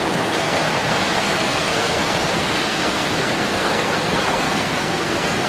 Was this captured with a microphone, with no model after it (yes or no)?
no